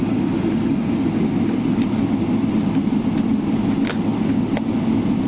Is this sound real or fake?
real